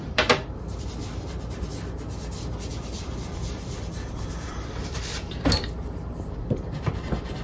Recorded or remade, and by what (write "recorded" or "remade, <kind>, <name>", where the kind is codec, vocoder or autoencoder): remade, vocoder, BigVGAN v2